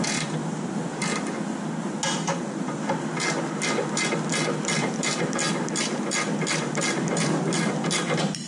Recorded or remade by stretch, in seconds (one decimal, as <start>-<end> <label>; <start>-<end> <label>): 0.0-8.5 recorded